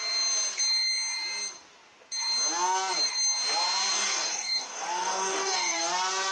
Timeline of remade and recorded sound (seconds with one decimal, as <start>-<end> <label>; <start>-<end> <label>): 0.0-3.9 recorded; 3.9-5.8 remade; 5.8-6.3 recorded

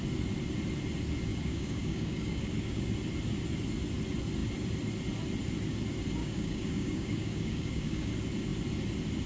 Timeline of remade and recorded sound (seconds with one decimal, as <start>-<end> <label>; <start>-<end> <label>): 0.0-1.3 recorded; 1.3-2.8 remade; 2.8-6.2 recorded; 6.2-8.1 remade; 8.1-9.3 recorded

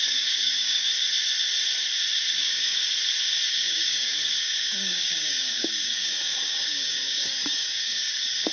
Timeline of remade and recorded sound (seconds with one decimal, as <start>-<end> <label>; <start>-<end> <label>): 0.0-0.9 remade; 0.9-2.3 recorded; 2.3-2.8 remade; 2.8-3.5 recorded; 3.5-8.5 remade

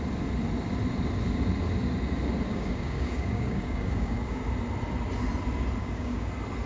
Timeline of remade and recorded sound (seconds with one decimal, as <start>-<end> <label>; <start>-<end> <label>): 0.0-2.5 recorded; 2.5-4.4 remade; 4.4-5.8 recorded; 5.8-6.3 remade; 6.3-6.7 recorded